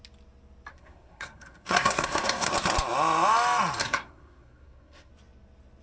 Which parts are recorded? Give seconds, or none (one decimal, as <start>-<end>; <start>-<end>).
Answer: 0.0-0.7; 2.5-3.8; 5.1-5.8